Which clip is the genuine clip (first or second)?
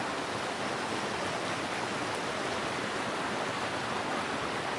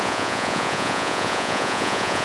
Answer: first